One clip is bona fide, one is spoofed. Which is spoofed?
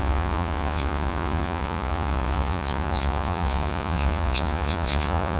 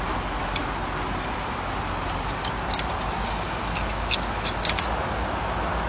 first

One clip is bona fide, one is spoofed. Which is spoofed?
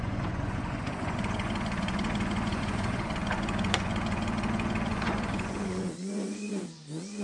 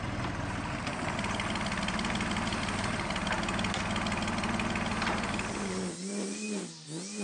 first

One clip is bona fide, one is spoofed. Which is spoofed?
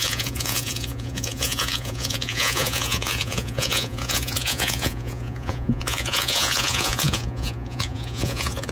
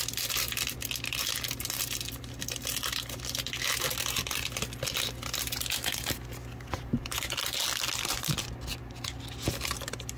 first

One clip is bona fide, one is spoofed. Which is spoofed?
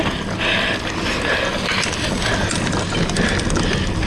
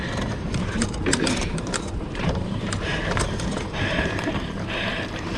second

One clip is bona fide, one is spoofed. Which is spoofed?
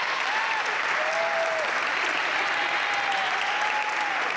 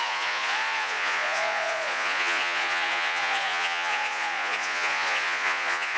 second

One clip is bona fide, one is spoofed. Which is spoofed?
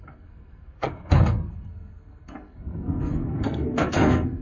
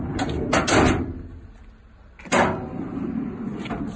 first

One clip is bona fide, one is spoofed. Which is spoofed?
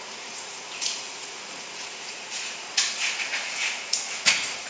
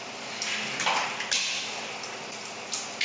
first